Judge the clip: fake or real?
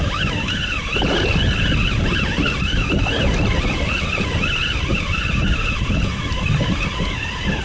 real